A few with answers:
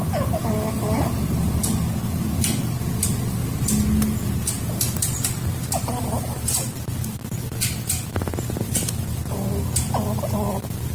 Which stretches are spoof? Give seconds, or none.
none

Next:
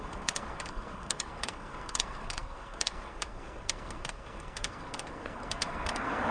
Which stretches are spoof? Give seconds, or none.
0.0-6.3 (codec, SNAC)

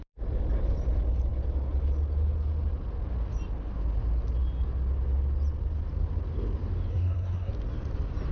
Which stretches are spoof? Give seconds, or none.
6.9-7.5 (codec, SNAC)

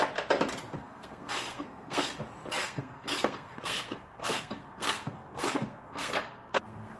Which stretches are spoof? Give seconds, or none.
0.8-2.1 (codec, SNAC); 2.6-7.0

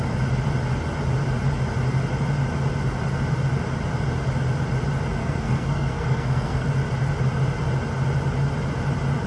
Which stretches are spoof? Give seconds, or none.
5.2-6.7 (codec, SNAC)

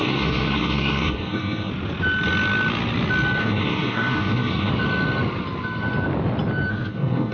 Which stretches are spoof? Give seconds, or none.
0.0-1.7 (codec, SNAC); 3.4-4.7; 6.7-7.3

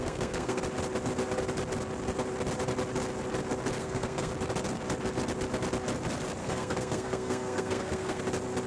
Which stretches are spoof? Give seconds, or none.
0.0-0.6 (codec, SNAC); 3.8-4.3; 6.4-8.2

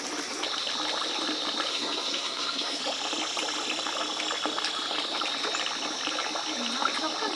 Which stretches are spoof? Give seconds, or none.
1.7-2.8 (codec, SNAC)